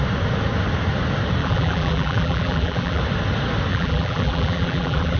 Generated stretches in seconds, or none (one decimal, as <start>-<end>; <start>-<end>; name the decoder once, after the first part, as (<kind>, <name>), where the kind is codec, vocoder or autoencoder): 1.4-3.0 (vocoder, BigVGAN v2); 3.7-5.2